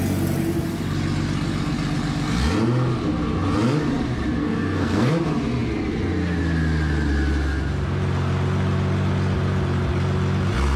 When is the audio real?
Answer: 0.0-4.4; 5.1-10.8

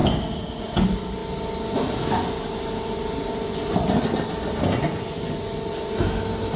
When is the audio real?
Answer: 0.0-6.6